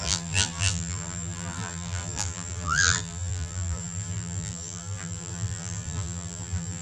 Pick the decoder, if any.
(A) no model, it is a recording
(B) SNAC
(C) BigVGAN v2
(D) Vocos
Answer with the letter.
C